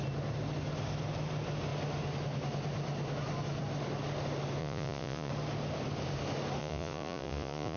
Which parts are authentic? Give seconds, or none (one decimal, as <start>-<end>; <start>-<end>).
0.0-4.6; 5.3-6.6